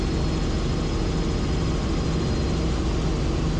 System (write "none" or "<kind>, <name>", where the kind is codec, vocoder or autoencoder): none